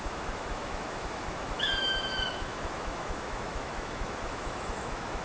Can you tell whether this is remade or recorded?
remade